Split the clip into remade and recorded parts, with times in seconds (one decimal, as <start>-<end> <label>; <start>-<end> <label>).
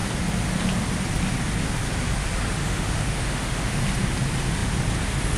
0.0-2.6 recorded; 2.6-3.8 remade; 3.8-5.4 recorded